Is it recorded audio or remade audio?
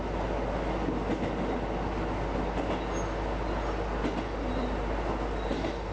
recorded